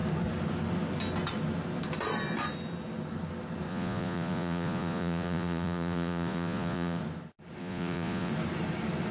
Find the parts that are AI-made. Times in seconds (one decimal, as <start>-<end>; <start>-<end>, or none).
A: 3.7-7.0; 7.6-8.3